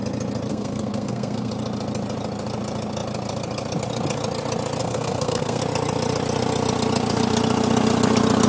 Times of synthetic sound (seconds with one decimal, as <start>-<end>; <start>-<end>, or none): 0.5-1.5; 4.8-5.6